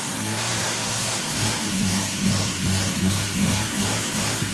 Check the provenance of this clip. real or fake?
fake